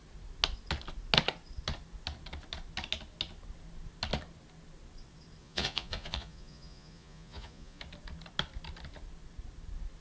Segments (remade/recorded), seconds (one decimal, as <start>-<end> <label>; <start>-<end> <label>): 0.0-5.4 recorded; 5.4-7.8 remade; 7.8-10.0 recorded